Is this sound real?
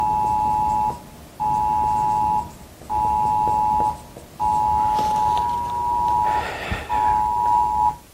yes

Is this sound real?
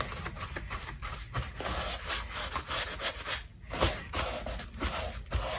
yes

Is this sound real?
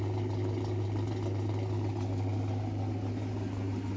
yes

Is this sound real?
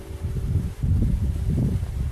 yes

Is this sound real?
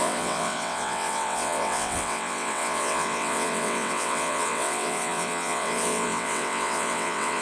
no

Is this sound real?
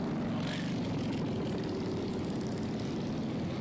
yes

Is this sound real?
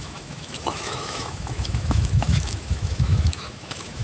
no